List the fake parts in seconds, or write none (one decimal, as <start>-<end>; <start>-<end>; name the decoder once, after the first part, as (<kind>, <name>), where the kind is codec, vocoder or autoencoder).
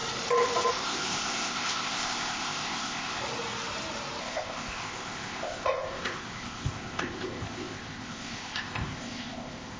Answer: 0.7-3.2 (codec, ZipCodec); 4.2-9.8